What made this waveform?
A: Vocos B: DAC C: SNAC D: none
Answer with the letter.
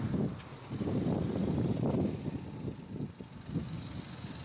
D